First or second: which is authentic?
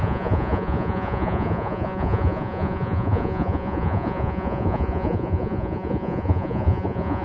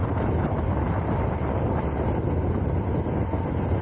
second